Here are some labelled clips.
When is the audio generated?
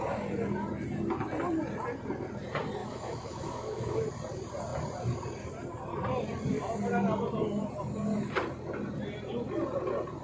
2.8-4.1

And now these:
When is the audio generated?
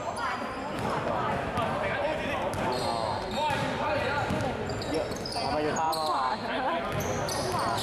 none